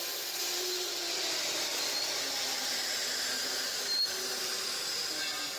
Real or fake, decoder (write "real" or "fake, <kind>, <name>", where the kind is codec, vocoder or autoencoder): fake, vocoder, BigVGAN v2